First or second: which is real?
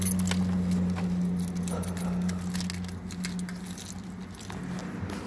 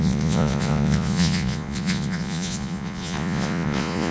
first